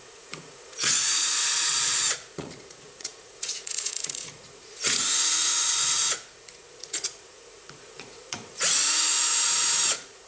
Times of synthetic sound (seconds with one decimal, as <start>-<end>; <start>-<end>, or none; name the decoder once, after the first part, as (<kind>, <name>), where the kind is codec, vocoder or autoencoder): 0.0-10.3 (vocoder, Vocos)